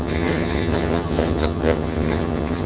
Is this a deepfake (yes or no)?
yes